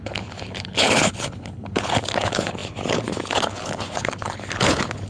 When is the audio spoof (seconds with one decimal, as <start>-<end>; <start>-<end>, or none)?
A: 0.0-5.1